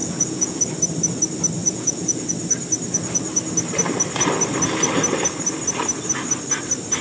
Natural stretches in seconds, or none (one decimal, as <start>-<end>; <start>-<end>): 0.6-1.6; 2.3-7.0